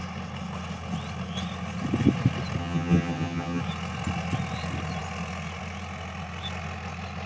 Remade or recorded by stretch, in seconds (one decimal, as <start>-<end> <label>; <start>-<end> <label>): 0.0-2.6 recorded; 2.6-3.6 remade; 3.6-7.3 recorded